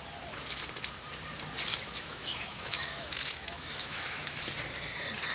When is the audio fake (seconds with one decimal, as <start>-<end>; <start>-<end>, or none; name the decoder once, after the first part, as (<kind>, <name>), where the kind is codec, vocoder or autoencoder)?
1.7-4.4 (autoencoder, DAC-VAE)

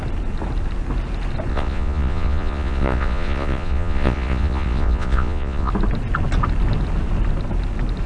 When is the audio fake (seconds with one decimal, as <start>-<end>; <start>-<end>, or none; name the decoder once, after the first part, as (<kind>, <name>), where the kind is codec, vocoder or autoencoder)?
1.5-5.7 (vocoder, Vocos)

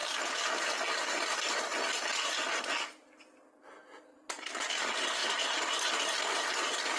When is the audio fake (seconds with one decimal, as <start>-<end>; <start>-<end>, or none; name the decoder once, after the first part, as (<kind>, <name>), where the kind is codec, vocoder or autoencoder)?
5.2-5.9 (vocoder, BigVGAN v2)

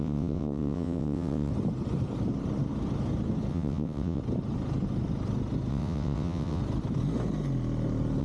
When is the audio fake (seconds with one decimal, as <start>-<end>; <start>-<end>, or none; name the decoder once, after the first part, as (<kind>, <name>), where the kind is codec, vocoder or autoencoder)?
0.0-1.5 (vocoder, WaveNeXt); 3.5-4.2; 5.7-6.6